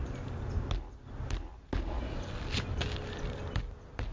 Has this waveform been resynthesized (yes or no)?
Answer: no